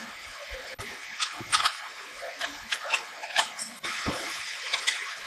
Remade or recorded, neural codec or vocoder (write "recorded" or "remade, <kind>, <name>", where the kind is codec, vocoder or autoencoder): remade, codec, HILCodec